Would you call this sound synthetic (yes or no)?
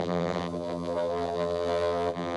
yes